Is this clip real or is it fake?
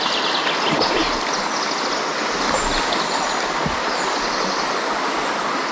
real